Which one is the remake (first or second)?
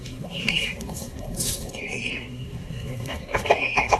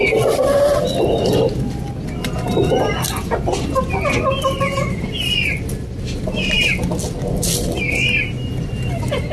first